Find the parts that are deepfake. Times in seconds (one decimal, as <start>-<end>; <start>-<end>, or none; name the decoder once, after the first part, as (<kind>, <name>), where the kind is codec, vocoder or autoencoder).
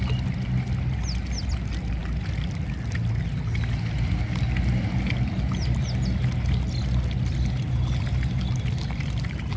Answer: none